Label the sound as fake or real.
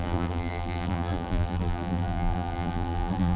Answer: fake